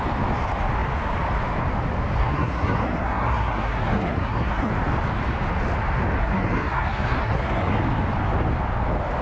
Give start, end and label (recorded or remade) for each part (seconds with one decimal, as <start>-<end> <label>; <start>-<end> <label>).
0.0-2.2 recorded; 2.2-4.7 remade; 4.7-6.2 recorded; 6.2-7.8 remade; 7.8-9.2 recorded